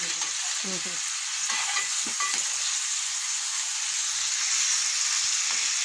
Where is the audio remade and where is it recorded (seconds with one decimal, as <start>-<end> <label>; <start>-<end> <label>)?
0.0-1.3 recorded; 1.3-2.1 remade; 2.1-2.9 recorded; 2.9-3.8 remade; 3.8-5.8 recorded